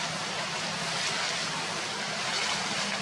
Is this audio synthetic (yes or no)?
no